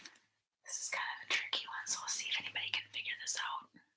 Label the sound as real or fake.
real